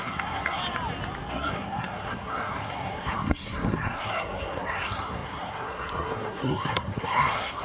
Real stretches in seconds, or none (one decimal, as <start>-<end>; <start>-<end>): 0.6-1.3